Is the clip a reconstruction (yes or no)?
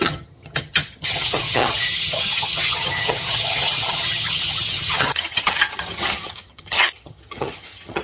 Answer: yes